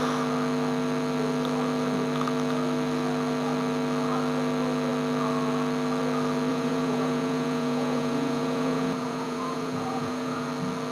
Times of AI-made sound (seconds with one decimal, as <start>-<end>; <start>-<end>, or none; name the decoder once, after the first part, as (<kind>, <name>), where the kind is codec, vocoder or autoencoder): 6.5-10.5 (vocoder, Vocos)